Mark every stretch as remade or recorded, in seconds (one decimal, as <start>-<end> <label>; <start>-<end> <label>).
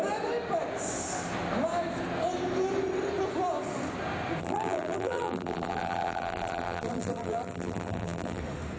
0.0-4.4 recorded; 4.4-8.4 remade; 8.4-8.8 recorded